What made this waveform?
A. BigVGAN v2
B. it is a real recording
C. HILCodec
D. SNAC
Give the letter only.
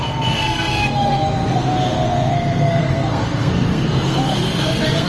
D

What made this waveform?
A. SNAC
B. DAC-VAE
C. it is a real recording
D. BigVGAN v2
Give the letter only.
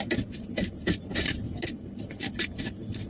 C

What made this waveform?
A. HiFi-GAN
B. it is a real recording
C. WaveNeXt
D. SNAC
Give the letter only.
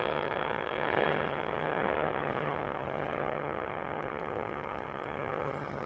A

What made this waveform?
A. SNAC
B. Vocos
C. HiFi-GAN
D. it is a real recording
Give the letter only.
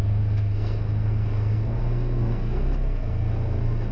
A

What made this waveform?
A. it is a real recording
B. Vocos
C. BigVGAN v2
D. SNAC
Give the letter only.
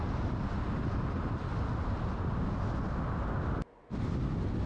A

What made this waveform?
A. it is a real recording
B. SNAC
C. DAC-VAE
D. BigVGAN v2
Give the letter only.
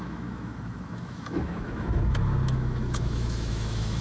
C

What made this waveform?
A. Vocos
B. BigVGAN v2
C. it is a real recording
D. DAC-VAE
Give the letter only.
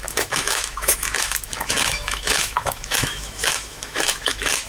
D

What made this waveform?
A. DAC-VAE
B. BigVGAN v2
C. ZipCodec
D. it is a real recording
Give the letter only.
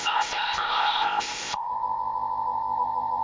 C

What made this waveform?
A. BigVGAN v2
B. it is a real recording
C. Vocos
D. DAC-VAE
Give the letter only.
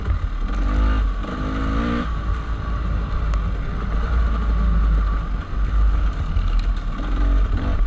B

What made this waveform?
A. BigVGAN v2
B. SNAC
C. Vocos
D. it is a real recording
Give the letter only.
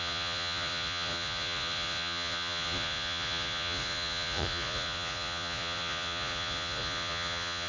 C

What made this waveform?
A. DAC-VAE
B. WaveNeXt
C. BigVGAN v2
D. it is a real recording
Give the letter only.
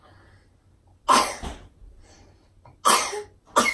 D